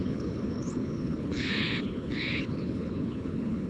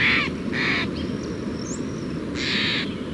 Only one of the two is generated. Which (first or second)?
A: first